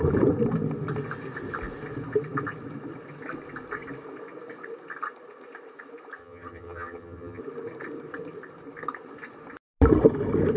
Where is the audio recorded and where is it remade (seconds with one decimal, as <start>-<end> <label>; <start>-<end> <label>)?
0.0-6.2 recorded; 6.2-7.4 remade; 7.4-10.6 recorded